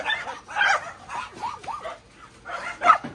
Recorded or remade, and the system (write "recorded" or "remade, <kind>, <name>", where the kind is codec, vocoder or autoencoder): recorded